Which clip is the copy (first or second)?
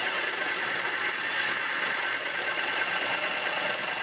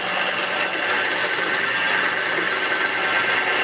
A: first